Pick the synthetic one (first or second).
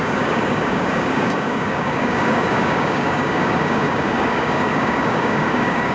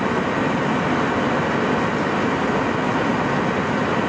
first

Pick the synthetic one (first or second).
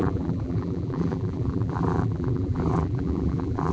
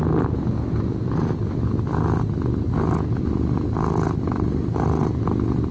first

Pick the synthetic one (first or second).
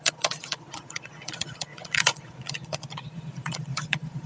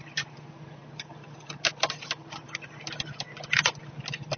first